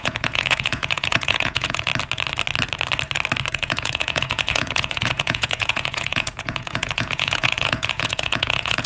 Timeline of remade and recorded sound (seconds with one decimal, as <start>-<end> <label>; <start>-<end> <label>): 0.0-1.9 remade; 1.9-3.5 recorded; 3.5-8.9 remade